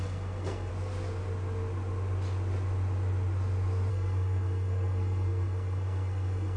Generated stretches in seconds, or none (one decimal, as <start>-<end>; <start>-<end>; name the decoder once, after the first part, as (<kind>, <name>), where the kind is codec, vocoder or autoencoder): 0.0-0.7 (codec, SNAC); 3.9-6.6

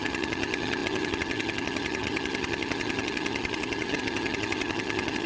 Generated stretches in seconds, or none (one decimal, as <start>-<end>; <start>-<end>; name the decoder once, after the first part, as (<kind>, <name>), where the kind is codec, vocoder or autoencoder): 0.0-5.3 (vocoder, HiFi-GAN)

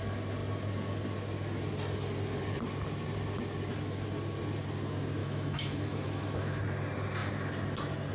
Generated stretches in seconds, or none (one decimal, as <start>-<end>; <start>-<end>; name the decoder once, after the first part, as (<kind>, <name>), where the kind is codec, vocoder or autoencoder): 5.2-6.6 (autoencoder, DAC-VAE)

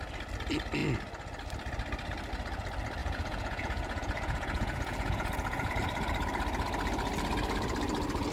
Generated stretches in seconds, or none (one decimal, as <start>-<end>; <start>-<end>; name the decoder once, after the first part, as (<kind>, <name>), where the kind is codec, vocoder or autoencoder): 3.0-5.7 (vocoder, Vocos)